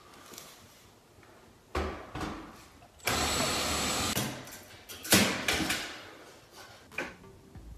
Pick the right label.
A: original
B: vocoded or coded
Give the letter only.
A